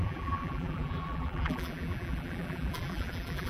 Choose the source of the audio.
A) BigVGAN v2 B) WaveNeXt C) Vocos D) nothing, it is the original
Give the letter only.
A